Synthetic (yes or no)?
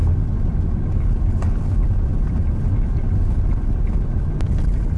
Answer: no